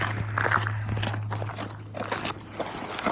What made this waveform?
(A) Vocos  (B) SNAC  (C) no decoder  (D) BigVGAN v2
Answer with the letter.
C